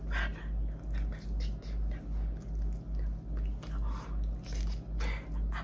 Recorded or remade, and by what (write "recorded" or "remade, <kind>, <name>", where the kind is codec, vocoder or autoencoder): recorded